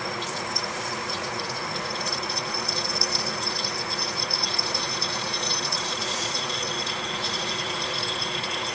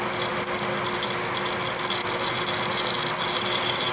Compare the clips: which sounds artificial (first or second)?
first